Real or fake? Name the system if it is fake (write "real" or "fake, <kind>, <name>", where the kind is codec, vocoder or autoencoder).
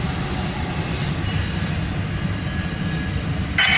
real